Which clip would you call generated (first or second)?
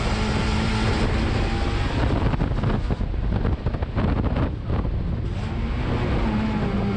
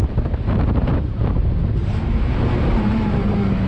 second